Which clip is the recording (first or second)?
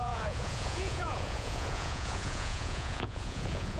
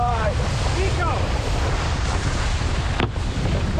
second